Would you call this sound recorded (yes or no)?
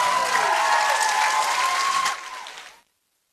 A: yes